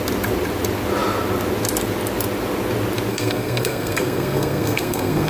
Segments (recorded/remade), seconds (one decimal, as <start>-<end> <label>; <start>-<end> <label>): 0.0-3.1 recorded; 3.1-5.3 remade

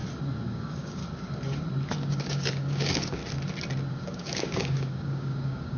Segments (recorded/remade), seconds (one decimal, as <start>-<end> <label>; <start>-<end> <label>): 0.0-0.5 recorded; 0.5-1.0 remade; 1.0-2.0 recorded; 2.0-3.2 remade; 3.2-3.9 recorded; 3.9-5.8 remade

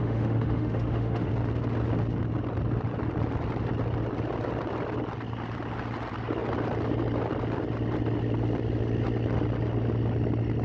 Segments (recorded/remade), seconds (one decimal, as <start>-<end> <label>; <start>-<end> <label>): 0.0-1.3 remade; 1.3-10.6 recorded